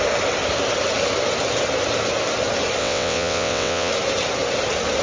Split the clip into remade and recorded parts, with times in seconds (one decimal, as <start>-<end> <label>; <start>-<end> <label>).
0.0-2.8 recorded; 2.8-3.9 remade; 3.9-5.0 recorded